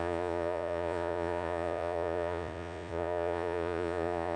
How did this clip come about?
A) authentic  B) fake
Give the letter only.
B